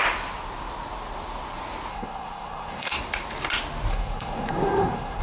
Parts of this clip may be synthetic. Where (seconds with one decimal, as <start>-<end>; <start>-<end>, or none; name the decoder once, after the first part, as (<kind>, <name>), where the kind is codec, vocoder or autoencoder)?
1.9-2.9 (codec, SNAC); 3.9-5.2